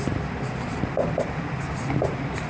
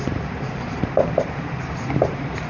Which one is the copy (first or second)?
second